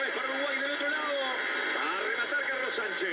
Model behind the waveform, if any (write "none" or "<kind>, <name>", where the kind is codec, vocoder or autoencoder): none